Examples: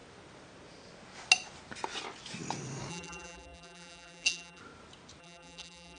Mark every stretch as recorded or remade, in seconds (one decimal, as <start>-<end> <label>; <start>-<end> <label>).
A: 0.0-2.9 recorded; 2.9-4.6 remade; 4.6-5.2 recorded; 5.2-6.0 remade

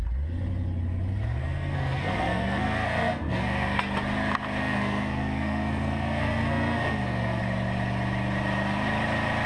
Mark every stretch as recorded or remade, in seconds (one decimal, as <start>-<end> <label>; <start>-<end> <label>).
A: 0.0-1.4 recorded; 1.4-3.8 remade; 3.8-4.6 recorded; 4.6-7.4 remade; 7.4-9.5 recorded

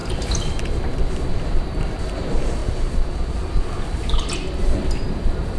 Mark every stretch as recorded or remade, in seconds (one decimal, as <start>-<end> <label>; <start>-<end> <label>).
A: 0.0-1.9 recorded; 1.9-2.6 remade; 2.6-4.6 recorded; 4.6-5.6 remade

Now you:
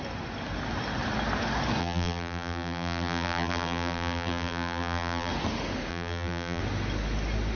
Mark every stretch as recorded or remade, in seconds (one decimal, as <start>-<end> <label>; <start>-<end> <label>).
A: 0.0-1.8 recorded; 1.8-5.3 remade; 5.3-5.9 recorded; 5.9-6.6 remade; 6.6-7.6 recorded

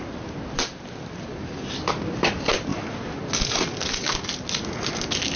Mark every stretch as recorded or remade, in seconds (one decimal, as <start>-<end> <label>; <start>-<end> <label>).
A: 0.0-5.4 recorded